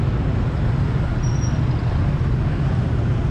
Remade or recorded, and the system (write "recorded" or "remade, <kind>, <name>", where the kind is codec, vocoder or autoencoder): recorded